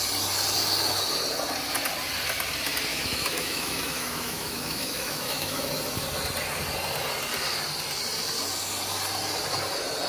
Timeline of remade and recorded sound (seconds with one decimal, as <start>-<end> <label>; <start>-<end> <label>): 0.0-2.9 recorded; 2.9-5.7 remade; 5.7-10.1 recorded